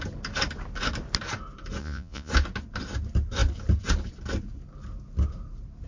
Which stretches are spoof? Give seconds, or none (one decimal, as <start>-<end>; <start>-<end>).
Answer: 1.8-2.3